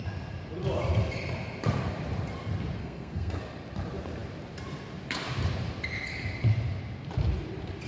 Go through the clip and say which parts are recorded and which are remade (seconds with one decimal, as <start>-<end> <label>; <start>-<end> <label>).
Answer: 0.0-2.8 recorded; 2.8-3.4 remade; 3.4-7.9 recorded